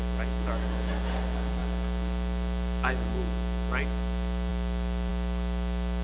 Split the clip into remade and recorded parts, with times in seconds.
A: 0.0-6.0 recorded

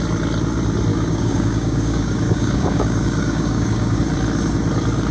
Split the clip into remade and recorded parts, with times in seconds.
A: 0.0-0.9 recorded; 0.9-4.0 remade; 4.0-5.1 recorded

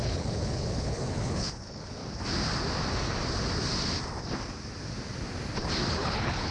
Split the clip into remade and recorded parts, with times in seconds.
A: 0.0-2.0 remade; 2.0-5.9 recorded; 5.9-6.5 remade

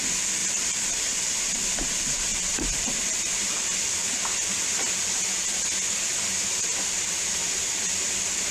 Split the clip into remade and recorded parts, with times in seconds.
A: 0.0-0.4 recorded; 0.4-1.9 remade; 1.9-2.3 recorded; 2.3-3.6 remade; 3.6-8.5 recorded

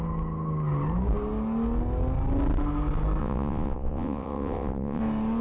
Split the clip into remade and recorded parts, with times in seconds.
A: 0.0-3.2 recorded; 3.2-5.0 remade; 5.0-5.4 recorded

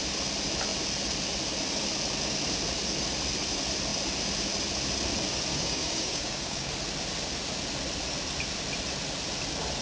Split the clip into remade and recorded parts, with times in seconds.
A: 0.0-5.5 recorded; 5.5-6.7 remade; 6.7-9.8 recorded

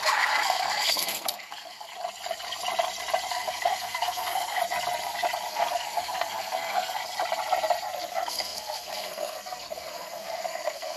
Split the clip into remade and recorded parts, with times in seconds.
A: 0.0-1.9 remade; 1.9-3.3 recorded; 3.3-4.6 remade; 4.6-5.5 recorded; 5.5-7.0 remade; 7.0-8.1 recorded; 8.1-11.0 remade